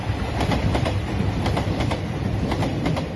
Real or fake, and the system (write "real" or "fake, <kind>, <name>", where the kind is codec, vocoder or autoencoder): fake, vocoder, BigVGAN v2